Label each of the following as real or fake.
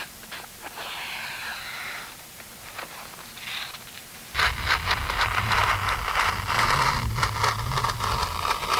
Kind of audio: real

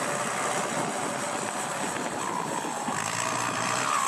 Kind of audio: real